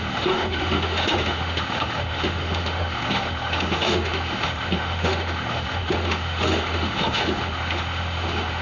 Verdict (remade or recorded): remade